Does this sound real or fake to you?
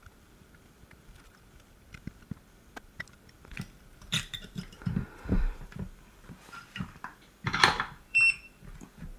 fake